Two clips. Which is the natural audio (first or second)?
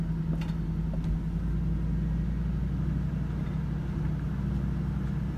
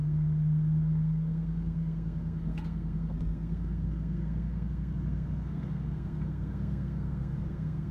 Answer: first